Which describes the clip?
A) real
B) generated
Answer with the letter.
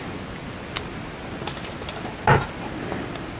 A